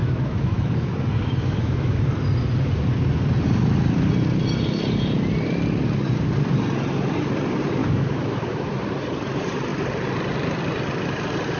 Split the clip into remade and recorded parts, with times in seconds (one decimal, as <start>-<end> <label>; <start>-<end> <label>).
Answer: 0.0-2.0 remade; 2.0-7.8 recorded; 7.8-8.8 remade; 8.8-11.6 recorded